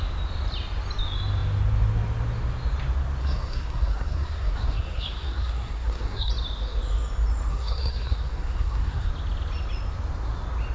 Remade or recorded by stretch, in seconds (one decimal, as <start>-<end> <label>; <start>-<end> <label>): 0.0-3.2 recorded; 3.2-6.3 remade; 6.3-7.5 recorded; 7.5-9.1 remade; 9.1-10.7 recorded